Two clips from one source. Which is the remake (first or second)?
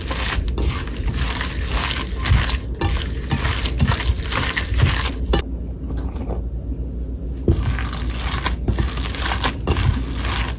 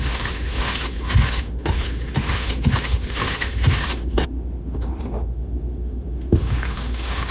second